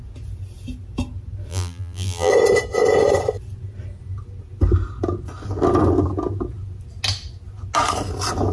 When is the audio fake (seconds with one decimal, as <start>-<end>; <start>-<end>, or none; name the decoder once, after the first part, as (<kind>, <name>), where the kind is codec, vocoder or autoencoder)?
1.5-2.3 (vocoder, BigVGAN v2)